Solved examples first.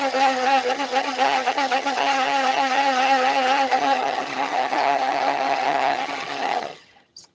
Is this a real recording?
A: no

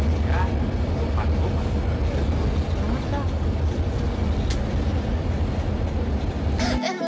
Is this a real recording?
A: yes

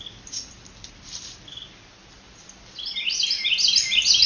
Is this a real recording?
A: yes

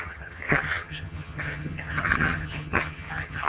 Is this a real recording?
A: no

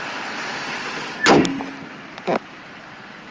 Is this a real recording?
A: yes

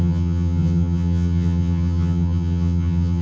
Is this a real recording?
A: no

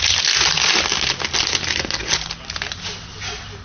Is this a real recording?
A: yes